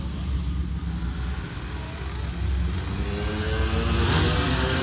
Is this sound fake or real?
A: real